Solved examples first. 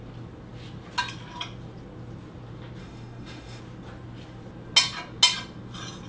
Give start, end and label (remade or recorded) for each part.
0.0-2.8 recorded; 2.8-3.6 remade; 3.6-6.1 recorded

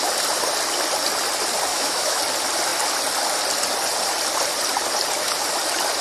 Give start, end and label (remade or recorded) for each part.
0.0-1.7 recorded; 1.7-2.2 remade; 2.2-6.0 recorded

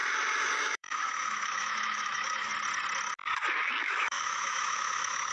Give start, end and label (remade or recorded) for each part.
0.0-0.6 recorded; 0.6-2.5 remade; 2.5-3.5 recorded; 3.5-5.3 remade

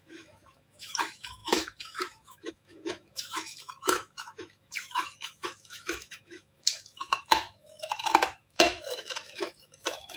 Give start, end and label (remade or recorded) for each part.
0.0-10.2 remade

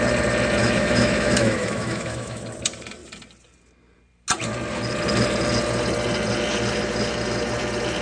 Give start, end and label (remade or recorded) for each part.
0.0-0.6 recorded; 0.6-2.4 remade; 2.4-8.0 recorded